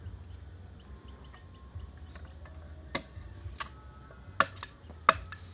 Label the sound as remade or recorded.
recorded